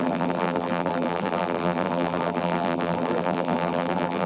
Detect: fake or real fake